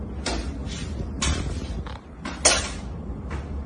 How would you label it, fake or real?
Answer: real